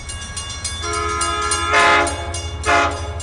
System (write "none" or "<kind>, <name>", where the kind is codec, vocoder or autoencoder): none